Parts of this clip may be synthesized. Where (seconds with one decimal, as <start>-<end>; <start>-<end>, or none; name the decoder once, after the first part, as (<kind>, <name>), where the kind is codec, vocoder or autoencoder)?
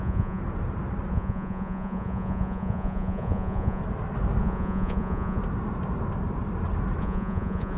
0.0-0.4 (vocoder, Vocos); 1.1-3.8; 4.4-5.4; 7.0-7.8